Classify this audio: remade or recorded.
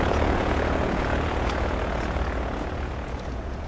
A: remade